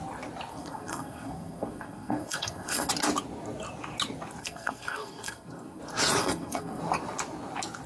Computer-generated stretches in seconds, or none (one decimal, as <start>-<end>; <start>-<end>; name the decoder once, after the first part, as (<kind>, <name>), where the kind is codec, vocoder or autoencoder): 0.5-2.9 (codec, SNAC); 4.4-5.8; 6.2-6.8